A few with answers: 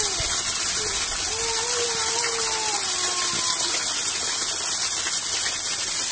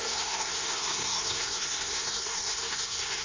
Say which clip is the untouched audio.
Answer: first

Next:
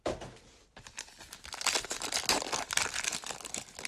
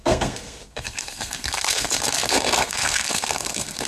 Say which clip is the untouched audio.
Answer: first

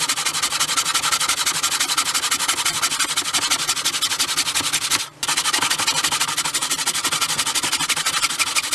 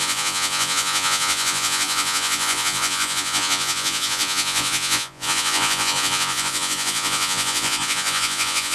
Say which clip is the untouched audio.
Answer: first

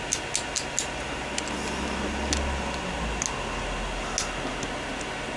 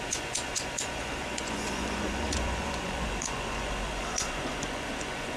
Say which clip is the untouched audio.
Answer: first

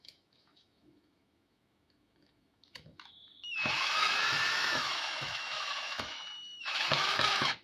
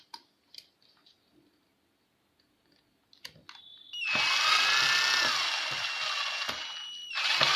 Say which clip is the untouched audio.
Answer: second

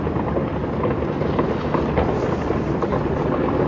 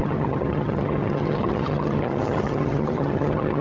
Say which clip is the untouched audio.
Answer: first